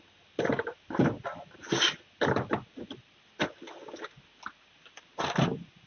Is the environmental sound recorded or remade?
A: recorded